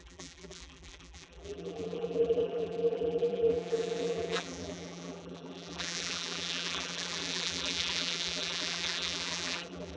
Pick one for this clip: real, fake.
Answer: fake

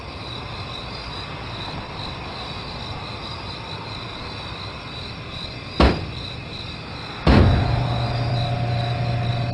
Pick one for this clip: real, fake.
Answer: real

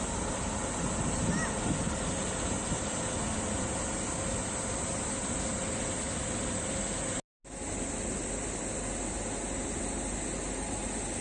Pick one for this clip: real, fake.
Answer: real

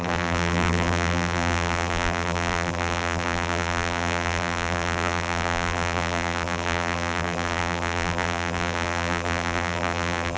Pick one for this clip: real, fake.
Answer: fake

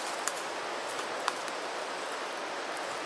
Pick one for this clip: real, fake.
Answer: fake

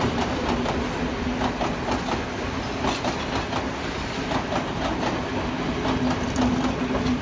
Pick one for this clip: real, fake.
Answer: real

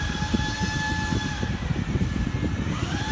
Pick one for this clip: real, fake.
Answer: fake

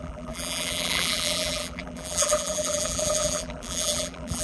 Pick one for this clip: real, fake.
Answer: fake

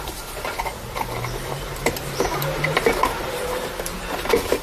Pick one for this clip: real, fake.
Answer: fake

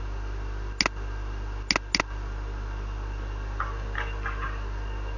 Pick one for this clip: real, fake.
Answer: real